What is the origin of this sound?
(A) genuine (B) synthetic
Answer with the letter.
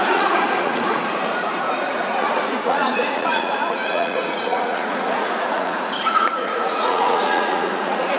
B